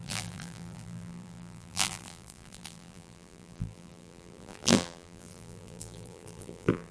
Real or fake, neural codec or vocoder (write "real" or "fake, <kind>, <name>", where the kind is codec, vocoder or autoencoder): fake, vocoder, BigVGAN v2